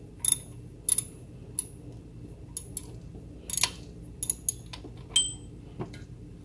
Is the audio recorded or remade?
recorded